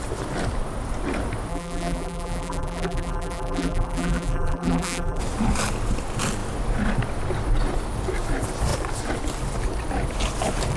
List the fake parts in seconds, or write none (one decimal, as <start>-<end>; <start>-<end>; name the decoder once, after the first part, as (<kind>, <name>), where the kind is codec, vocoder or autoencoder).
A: 1.5-5.2 (vocoder, BigVGAN v2)